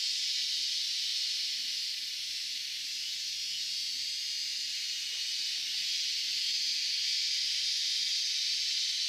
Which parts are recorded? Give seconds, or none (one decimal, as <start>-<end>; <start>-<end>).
0.0-9.1